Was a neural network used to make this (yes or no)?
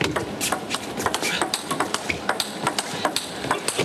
yes